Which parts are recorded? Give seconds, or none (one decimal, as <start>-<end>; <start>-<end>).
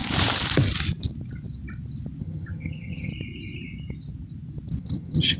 0.0-2.2; 3.1-4.8